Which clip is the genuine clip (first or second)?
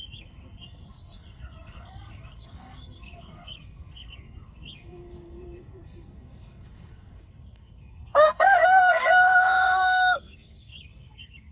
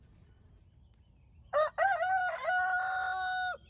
second